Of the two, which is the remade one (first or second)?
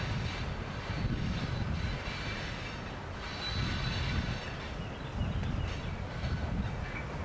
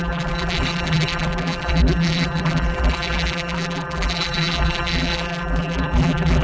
second